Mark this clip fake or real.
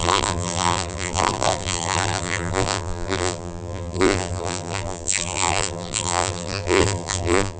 fake